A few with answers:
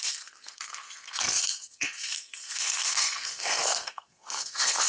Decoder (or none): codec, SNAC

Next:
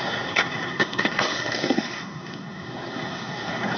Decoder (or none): codec, SNAC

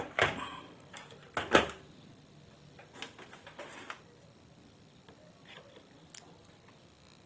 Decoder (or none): none